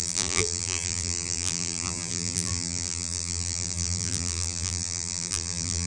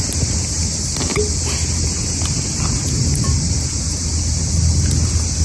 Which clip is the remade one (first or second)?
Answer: first